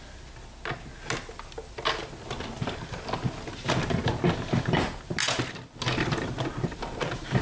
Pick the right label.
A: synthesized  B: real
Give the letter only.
B